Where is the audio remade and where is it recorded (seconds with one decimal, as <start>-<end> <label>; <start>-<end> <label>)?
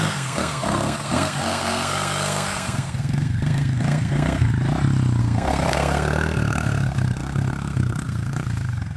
0.0-4.5 remade; 4.5-5.2 recorded; 5.2-9.0 remade